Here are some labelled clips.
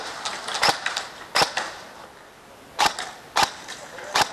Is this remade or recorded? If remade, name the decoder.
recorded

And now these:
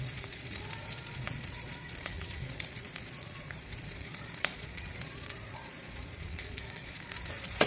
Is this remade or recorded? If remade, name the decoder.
remade, vocoder, Vocos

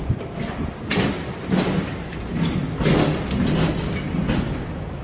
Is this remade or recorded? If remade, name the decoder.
recorded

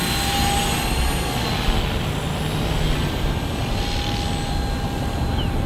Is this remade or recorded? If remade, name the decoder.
recorded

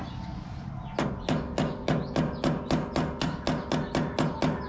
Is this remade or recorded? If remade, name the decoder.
recorded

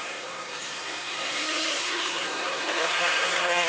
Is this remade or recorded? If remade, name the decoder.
remade, codec, SNAC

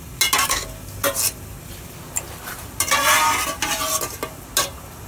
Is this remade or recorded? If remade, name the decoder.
recorded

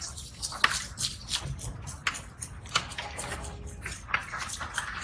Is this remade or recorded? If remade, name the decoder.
recorded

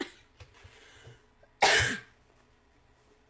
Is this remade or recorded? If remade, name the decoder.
recorded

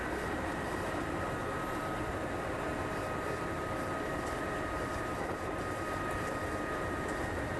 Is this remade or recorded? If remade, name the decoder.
remade, vocoder, BigVGAN v2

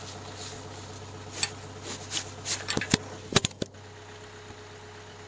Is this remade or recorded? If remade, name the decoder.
recorded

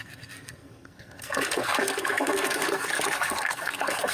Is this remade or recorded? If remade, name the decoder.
remade, codec, SNAC